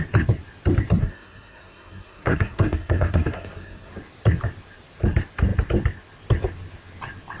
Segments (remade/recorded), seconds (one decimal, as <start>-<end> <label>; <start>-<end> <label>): 0.0-1.0 recorded; 1.0-3.9 remade; 3.9-7.4 recorded